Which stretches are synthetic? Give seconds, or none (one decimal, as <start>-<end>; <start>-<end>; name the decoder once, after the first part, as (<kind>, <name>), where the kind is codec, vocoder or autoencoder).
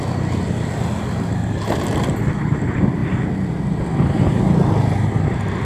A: none